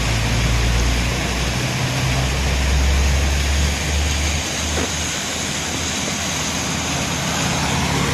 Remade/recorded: recorded